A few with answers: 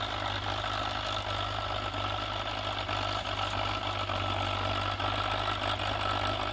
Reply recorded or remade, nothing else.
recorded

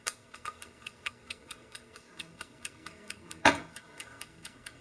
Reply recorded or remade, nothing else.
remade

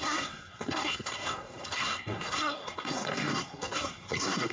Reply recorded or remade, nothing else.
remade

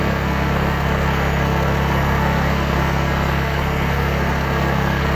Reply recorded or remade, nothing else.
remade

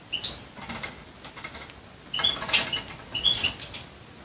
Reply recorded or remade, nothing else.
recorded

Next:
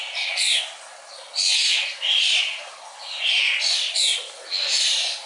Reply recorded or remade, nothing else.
recorded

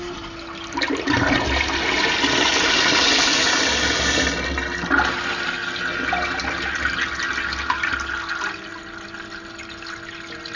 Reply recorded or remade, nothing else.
recorded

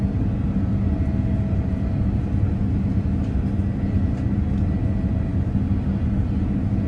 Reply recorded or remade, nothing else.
recorded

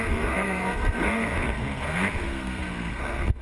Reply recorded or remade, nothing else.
remade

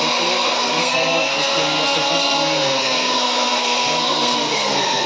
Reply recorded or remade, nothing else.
remade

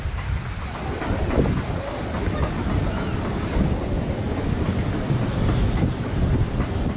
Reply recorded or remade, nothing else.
recorded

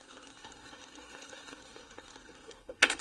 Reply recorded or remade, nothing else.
remade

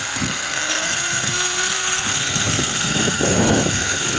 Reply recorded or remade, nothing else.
remade